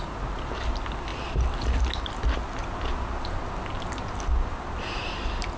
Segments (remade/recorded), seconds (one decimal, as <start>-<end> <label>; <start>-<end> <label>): 0.0-5.6 recorded